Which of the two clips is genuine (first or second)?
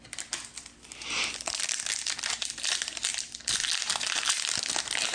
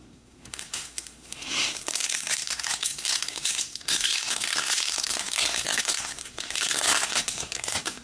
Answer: first